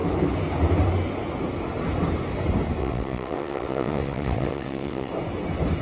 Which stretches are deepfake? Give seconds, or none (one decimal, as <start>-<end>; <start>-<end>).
2.8-5.1